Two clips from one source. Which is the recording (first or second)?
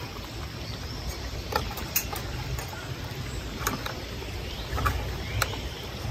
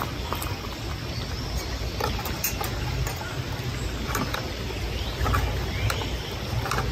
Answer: second